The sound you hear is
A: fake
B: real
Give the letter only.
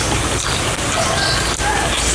B